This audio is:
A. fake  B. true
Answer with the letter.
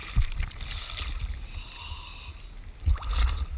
B